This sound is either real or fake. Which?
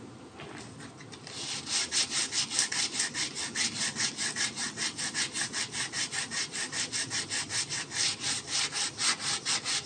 real